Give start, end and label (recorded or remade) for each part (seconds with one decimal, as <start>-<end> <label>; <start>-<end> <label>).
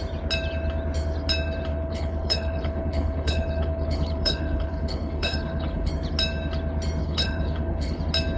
0.0-1.7 recorded; 1.7-5.9 remade; 5.9-7.0 recorded; 7.0-8.0 remade; 8.0-8.4 recorded